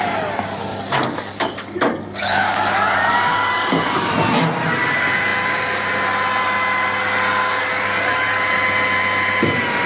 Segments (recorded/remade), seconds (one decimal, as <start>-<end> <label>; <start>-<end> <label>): 0.0-0.7 recorded; 0.7-4.1 remade; 4.1-9.9 recorded